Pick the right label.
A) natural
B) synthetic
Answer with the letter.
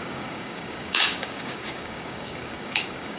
B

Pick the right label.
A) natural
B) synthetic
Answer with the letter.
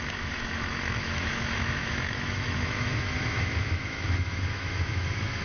B